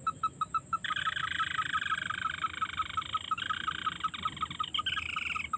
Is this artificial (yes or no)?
no